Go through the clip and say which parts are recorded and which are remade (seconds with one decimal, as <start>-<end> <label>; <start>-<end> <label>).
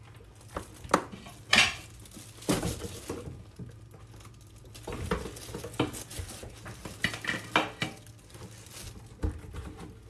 0.0-10.1 recorded